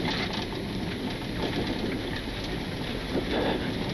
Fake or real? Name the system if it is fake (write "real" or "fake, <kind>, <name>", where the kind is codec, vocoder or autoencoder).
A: real